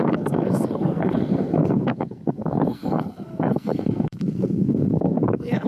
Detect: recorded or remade remade